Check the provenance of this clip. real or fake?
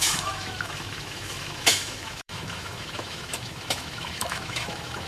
fake